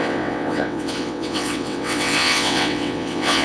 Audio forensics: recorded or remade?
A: remade